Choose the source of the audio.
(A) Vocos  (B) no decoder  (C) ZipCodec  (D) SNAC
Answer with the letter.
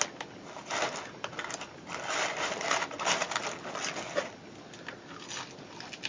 B